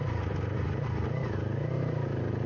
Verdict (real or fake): real